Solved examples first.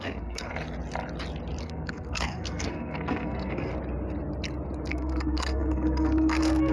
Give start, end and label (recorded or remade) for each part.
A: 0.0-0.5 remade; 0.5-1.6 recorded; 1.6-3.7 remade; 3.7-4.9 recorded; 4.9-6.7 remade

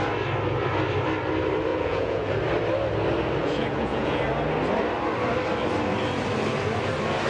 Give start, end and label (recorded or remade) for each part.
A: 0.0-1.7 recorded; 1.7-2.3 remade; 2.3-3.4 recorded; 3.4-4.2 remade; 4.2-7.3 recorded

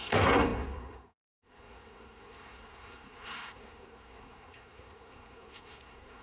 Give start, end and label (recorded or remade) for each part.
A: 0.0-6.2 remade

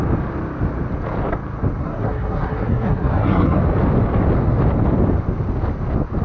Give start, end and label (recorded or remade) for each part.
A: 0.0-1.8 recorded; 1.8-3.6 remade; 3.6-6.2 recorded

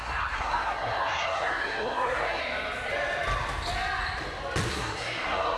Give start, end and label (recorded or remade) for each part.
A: 0.0-2.4 remade; 2.4-4.7 recorded; 4.7-5.6 remade

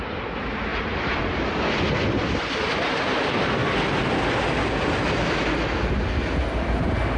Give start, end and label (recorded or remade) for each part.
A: 0.0-7.2 recorded

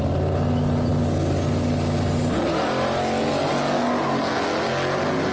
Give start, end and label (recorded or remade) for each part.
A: 0.0-5.3 recorded